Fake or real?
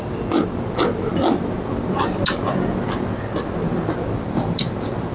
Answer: real